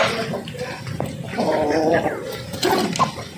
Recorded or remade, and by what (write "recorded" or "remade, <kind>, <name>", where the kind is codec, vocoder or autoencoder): recorded